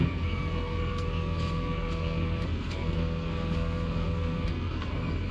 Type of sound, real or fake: fake